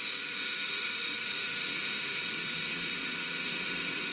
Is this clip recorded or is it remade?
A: remade